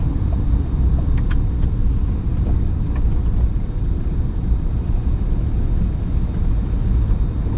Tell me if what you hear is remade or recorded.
remade